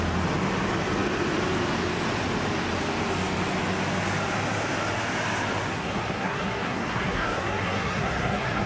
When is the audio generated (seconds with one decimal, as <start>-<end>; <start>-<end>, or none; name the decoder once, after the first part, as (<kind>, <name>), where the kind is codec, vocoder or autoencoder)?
5.7-8.7 (codec, SNAC)